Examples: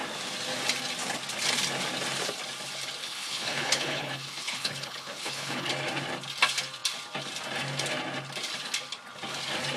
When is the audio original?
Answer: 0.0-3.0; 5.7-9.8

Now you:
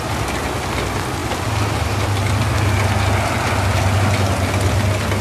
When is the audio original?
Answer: 0.0-5.2